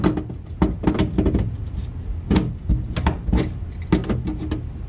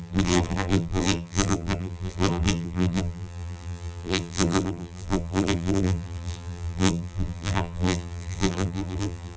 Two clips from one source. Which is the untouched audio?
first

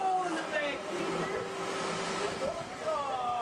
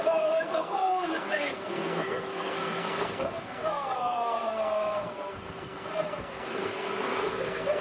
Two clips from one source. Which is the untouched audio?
first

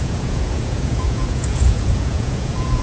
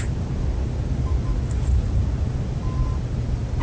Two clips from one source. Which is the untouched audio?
second